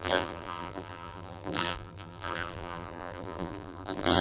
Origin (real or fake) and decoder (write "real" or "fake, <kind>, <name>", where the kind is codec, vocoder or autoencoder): fake, vocoder, BigVGAN v2